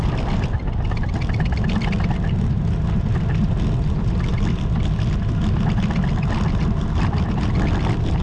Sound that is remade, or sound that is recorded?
recorded